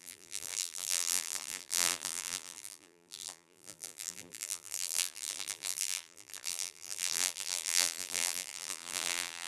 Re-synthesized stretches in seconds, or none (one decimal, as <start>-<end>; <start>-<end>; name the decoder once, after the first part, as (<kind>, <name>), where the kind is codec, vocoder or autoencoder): 0.0-9.5 (vocoder, BigVGAN v2)